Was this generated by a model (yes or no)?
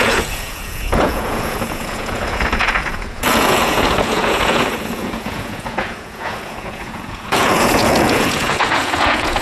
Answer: yes